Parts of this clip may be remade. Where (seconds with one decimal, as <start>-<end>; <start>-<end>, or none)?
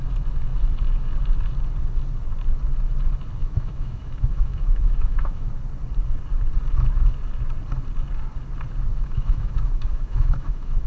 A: 3.4-5.5; 8.9-10.9